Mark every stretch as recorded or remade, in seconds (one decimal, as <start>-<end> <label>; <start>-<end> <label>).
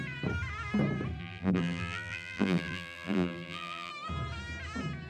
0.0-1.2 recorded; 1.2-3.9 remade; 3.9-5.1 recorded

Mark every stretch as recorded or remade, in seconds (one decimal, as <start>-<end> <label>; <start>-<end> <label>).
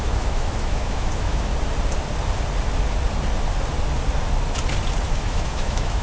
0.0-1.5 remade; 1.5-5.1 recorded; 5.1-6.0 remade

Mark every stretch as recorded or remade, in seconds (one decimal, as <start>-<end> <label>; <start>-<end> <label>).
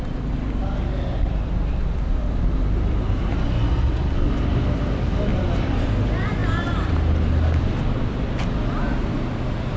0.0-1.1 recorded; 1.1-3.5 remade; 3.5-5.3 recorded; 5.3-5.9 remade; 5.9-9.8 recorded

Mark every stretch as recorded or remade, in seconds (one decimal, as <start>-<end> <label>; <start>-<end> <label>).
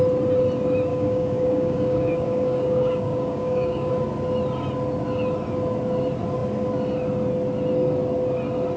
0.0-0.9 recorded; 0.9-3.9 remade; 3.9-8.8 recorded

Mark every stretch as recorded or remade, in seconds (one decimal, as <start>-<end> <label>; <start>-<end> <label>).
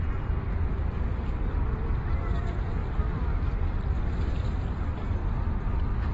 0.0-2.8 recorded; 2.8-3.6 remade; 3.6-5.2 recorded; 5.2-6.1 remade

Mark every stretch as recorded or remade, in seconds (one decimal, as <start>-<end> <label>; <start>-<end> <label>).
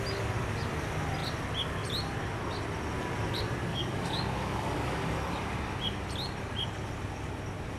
0.0-3.7 recorded; 3.7-5.3 remade; 5.3-7.8 recorded